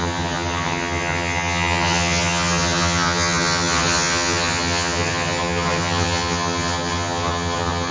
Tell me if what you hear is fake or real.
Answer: fake